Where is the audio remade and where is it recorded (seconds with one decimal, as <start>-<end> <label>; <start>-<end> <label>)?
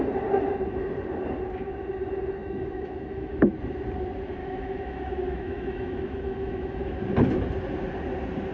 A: 0.0-2.4 recorded; 2.4-3.4 remade; 3.4-4.4 recorded; 4.4-6.9 remade; 6.9-8.5 recorded